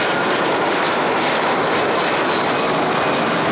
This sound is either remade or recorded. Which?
recorded